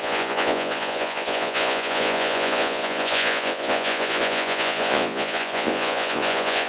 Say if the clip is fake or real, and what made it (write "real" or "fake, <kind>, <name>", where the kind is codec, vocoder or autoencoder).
fake, vocoder, Vocos